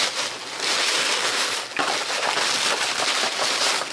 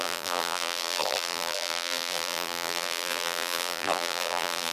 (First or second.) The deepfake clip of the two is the second